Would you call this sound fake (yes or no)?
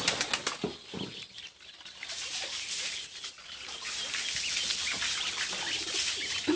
no